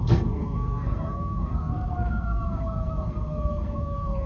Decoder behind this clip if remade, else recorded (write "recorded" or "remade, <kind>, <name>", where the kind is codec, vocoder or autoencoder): remade, codec, SNAC